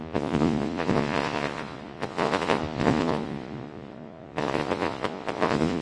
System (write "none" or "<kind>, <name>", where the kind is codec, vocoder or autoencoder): vocoder, Vocos